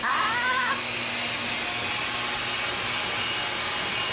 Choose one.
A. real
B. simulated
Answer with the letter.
A